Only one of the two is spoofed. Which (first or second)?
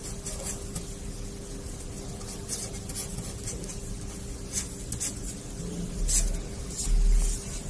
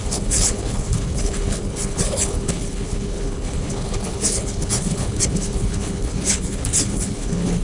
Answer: second